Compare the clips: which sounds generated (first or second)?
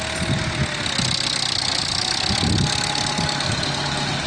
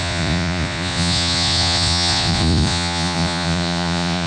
second